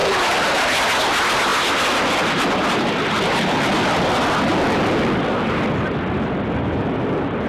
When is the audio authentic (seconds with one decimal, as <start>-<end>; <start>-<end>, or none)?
0.0-0.6; 4.5-5.3